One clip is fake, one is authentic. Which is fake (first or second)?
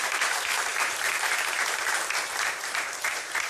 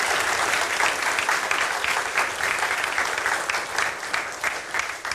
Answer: first